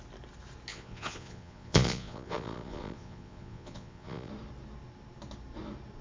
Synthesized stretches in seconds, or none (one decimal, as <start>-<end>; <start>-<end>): 0.7-4.3